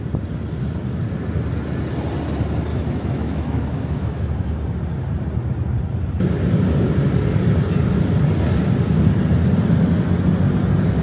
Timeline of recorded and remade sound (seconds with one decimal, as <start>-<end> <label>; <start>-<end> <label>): 0.0-2.7 recorded; 2.7-4.2 remade; 4.2-11.0 recorded